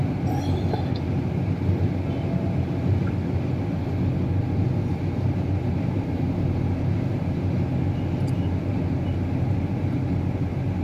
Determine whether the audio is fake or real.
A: real